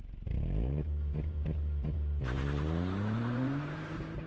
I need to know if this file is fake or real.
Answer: fake